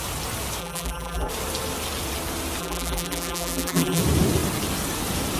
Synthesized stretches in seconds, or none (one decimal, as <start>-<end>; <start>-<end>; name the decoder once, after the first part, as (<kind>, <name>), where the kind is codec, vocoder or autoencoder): 0.6-1.3 (vocoder, BigVGAN v2); 2.6-4.0